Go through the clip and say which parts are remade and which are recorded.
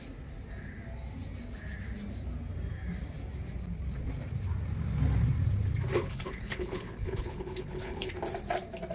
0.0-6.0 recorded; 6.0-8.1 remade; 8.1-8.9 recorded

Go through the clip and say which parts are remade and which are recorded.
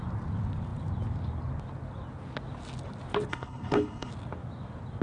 0.0-3.3 recorded; 3.3-4.1 remade; 4.1-5.0 recorded